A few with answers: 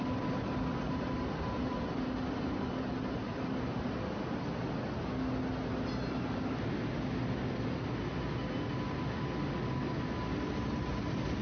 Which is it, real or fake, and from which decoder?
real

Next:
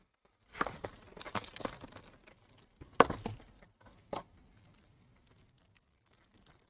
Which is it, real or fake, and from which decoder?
real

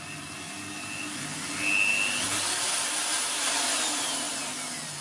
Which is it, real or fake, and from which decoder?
real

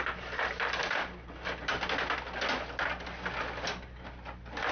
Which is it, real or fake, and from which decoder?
real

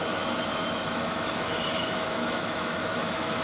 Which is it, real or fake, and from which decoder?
fake, autoencoder, DAC-VAE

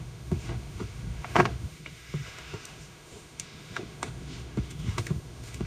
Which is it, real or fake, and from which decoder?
fake, autoencoder, DAC-VAE